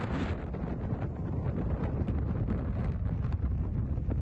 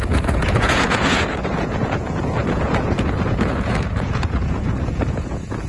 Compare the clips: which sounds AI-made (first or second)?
second